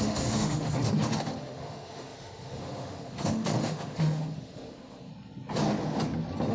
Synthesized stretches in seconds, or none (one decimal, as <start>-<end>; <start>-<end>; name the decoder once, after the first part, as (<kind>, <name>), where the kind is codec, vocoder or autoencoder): 0.0-5.1 (autoencoder, DAC-VAE)